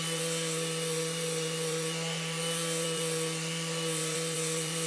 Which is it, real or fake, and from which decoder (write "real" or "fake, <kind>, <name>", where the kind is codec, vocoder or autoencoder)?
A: fake, vocoder, Vocos